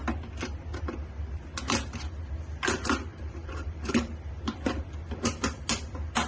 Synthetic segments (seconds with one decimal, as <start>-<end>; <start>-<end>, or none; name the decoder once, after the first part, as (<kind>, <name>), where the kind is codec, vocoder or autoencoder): 0.7-1.4 (vocoder, BigVGAN v2); 3.1-4.3